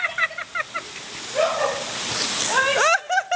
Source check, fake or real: real